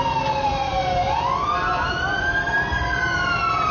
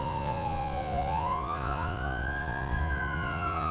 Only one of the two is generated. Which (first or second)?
second